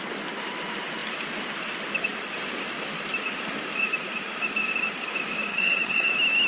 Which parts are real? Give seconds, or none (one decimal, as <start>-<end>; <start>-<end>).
0.0-5.5; 6.1-6.5